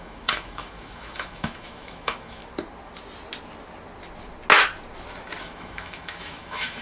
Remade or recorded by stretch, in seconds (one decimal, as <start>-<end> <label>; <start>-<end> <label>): 0.0-2.4 remade; 2.4-5.4 recorded; 5.4-6.8 remade